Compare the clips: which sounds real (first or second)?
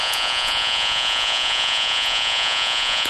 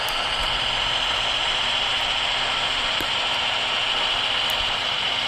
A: second